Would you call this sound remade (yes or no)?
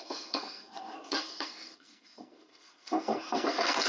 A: yes